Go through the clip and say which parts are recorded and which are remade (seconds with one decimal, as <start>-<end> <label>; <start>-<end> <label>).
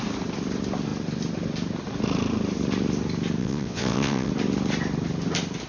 0.0-3.4 recorded; 3.4-4.3 remade; 4.3-5.7 recorded